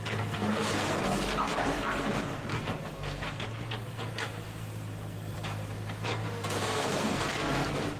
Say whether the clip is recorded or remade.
remade